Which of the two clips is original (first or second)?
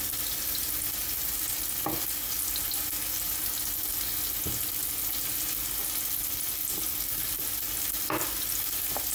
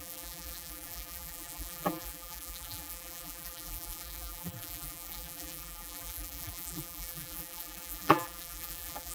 first